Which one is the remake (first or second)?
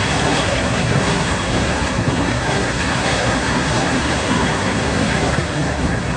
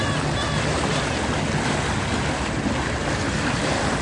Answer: first